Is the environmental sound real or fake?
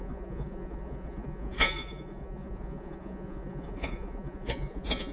fake